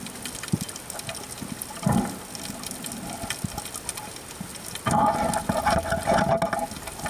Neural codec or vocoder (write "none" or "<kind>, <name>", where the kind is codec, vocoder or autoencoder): none